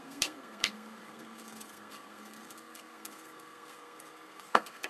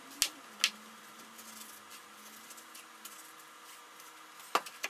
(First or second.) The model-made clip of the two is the first